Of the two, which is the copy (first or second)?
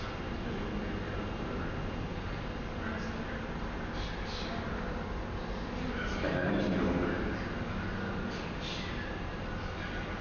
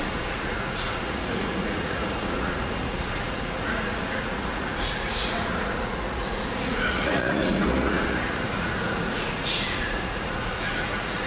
second